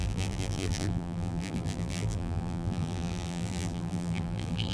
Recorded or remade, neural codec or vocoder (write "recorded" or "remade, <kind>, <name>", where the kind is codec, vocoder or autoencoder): remade, vocoder, BigVGAN v2